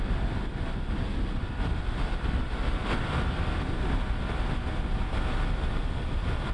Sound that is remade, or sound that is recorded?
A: recorded